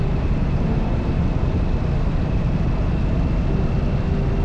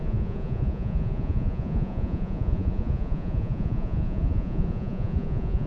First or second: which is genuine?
first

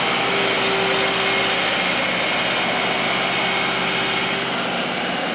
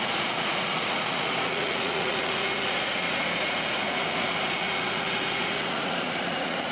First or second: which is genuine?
first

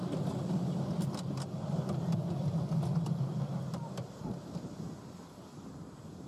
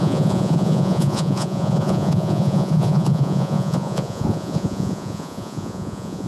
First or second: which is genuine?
first